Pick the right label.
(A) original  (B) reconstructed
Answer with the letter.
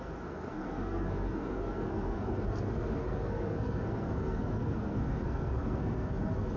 B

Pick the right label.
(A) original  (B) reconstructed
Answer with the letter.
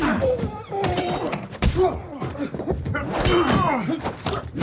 B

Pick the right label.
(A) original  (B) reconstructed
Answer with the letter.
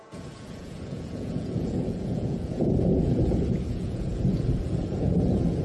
B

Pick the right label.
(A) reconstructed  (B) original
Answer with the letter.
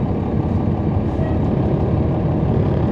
A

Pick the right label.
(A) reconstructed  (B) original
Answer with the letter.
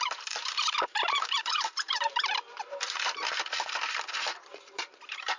A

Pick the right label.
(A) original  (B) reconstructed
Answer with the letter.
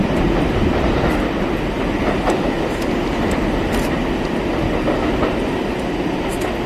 A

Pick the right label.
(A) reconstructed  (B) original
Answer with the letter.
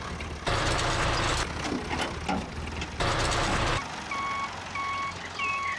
B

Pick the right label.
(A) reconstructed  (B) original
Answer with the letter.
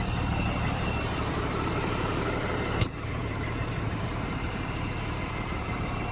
A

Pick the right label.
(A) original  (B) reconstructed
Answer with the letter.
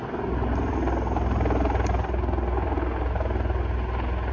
A